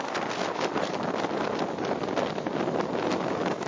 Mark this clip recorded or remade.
recorded